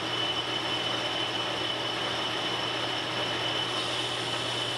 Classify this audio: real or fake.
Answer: real